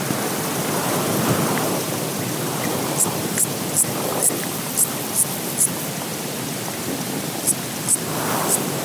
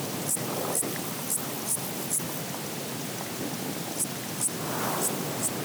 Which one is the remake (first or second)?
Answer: first